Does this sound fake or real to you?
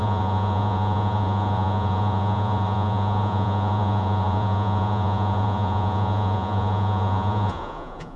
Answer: fake